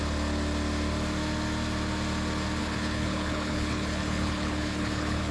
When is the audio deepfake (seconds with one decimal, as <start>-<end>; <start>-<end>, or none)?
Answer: 2.6-5.3